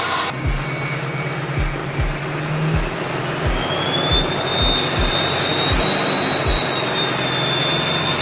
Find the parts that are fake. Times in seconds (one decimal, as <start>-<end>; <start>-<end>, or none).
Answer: none